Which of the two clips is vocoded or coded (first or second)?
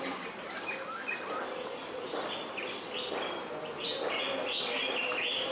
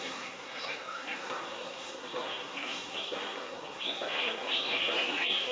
second